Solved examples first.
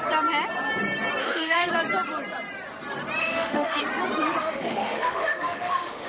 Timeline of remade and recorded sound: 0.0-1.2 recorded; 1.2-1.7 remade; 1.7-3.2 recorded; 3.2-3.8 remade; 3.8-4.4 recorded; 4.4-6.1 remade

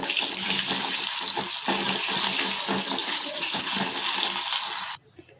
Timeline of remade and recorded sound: 0.0-3.0 recorded; 3.0-3.7 remade; 3.7-5.4 recorded